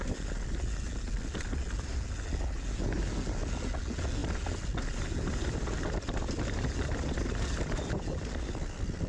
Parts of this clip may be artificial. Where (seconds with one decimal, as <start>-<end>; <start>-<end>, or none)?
none